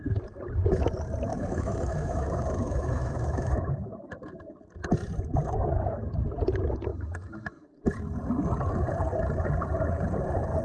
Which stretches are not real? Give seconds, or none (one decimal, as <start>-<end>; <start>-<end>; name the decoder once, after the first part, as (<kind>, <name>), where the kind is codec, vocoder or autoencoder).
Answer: 1.3-4.1 (autoencoder, DAC-VAE)